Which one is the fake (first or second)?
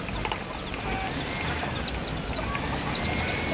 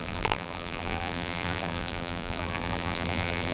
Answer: second